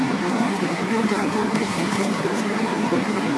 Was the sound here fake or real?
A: fake